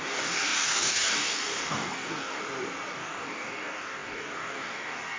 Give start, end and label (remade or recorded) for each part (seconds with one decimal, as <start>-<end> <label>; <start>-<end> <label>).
0.0-2.4 remade; 2.4-2.9 recorded; 2.9-5.2 remade